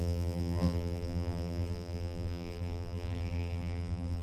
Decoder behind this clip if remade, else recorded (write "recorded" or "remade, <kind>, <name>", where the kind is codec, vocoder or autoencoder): remade, vocoder, BigVGAN v2